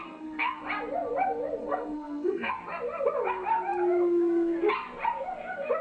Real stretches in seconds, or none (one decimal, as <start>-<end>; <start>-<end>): 0.6-1.6; 2.5-5.8

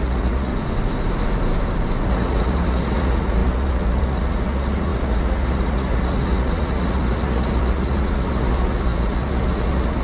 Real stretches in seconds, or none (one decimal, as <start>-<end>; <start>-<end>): 0.5-2.1

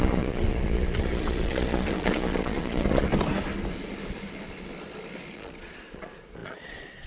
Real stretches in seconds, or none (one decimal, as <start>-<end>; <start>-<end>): 3.1-5.3

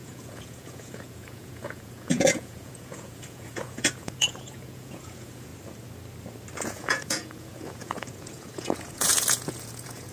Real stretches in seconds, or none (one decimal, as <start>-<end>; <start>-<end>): 5.5-6.6

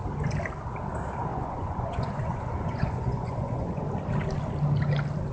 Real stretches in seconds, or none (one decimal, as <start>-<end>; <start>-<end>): 0.0-1.3; 3.8-5.3